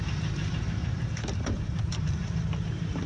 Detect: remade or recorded remade